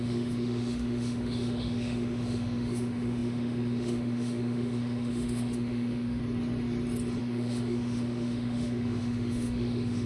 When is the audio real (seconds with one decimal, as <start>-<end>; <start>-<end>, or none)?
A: 6.2-7.2